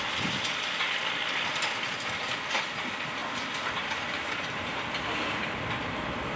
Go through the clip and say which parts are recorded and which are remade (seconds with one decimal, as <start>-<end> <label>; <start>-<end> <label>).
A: 0.0-6.4 recorded